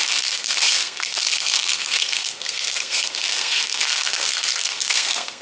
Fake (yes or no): yes